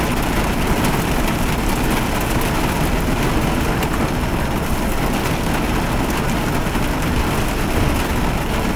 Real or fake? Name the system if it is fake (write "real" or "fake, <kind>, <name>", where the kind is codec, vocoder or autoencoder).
real